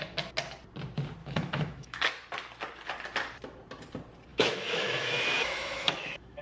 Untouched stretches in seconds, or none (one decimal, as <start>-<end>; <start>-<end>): 0.0-1.2; 2.0-4.3